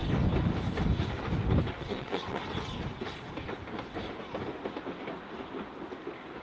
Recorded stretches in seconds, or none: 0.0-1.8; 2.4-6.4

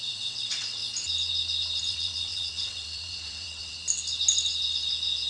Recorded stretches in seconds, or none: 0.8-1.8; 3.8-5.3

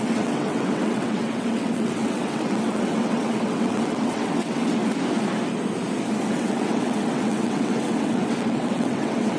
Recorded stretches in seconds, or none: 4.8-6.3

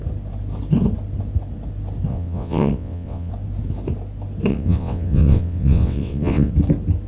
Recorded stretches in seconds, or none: 0.0-2.1; 3.3-4.5; 6.5-7.1

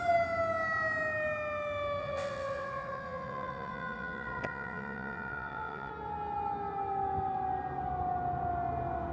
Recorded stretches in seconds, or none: 0.0-2.0; 5.9-9.1